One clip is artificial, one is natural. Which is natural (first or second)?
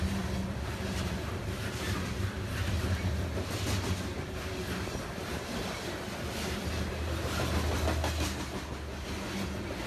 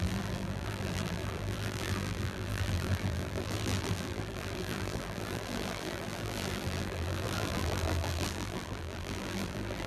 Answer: first